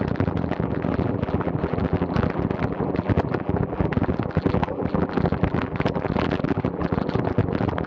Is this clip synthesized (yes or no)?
yes